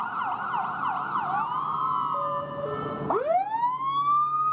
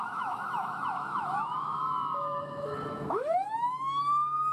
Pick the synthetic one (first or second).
second